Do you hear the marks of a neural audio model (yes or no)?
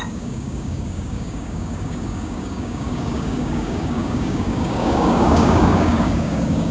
yes